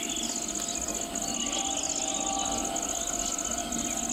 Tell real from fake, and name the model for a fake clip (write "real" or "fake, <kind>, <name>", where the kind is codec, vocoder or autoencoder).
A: real